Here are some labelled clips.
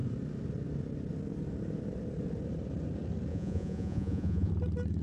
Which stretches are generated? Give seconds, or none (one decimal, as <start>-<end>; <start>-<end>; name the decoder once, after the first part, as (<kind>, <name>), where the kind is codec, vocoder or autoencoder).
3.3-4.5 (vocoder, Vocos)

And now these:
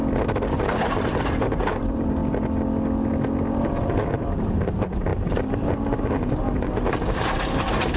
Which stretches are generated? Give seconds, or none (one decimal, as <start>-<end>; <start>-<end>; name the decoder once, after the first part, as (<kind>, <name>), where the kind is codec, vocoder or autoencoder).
0.9-2.2 (vocoder, BigVGAN v2); 3.6-8.0

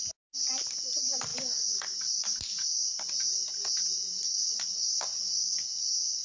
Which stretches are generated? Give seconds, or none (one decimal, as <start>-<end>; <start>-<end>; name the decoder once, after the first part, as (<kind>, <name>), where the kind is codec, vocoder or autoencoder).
none

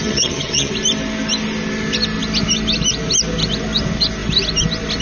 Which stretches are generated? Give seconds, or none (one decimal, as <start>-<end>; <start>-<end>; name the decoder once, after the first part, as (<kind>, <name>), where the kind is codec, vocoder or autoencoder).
0.0-0.7 (vocoder, HiFi-GAN)

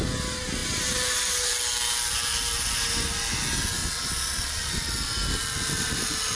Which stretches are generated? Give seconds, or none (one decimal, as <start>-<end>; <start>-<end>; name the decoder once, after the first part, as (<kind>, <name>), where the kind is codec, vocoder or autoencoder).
3.8-4.7 (vocoder, Vocos)